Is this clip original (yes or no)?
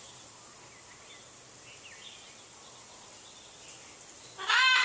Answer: yes